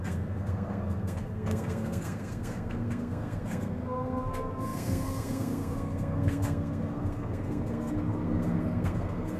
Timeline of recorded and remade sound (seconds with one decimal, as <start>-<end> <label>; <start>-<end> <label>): 0.0-9.4 remade